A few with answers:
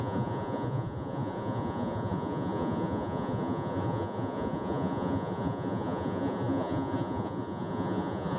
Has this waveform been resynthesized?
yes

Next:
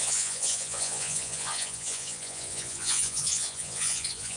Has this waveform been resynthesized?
yes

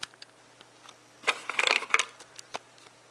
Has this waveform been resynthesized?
no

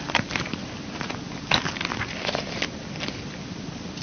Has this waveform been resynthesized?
no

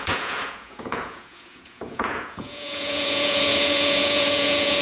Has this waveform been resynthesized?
yes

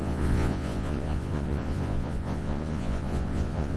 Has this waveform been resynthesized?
yes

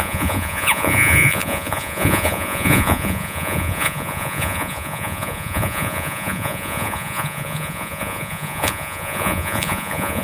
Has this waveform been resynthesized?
yes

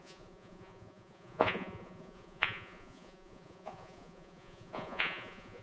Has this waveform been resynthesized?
yes